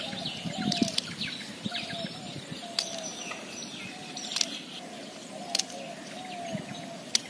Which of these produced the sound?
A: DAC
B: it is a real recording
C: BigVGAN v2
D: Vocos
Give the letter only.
B